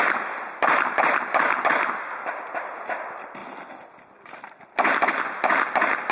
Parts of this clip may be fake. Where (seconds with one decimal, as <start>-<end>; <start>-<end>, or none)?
none